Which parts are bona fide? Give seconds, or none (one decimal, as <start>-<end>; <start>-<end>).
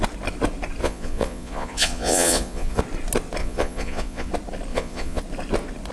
0.0-0.8; 2.8-3.4; 4.3-4.7; 5.2-5.9